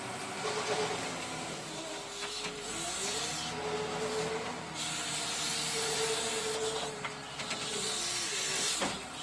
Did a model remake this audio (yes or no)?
no